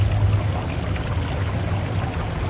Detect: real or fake real